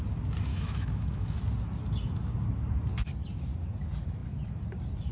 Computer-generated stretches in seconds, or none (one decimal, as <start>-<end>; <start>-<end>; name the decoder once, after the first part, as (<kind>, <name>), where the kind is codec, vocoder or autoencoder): 0.5-1.4 (autoencoder, DAC-VAE)

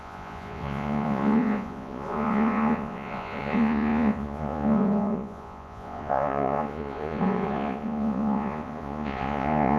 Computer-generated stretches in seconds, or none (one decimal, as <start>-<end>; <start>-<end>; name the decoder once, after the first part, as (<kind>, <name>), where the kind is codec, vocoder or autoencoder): 0.0-9.8 (vocoder, Vocos)